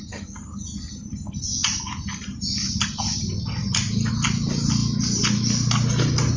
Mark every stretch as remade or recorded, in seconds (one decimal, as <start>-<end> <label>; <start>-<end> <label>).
0.0-6.4 recorded